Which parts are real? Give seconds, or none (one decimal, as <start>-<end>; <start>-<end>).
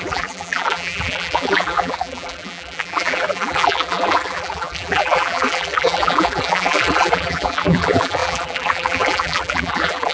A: none